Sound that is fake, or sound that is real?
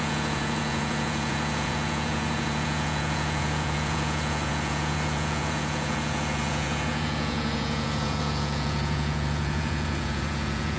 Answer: fake